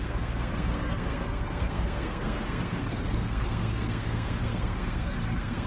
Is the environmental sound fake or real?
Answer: fake